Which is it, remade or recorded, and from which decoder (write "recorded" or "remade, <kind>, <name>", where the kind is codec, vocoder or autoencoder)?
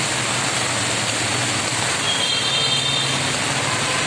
recorded